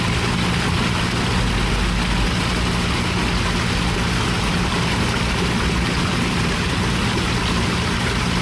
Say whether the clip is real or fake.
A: real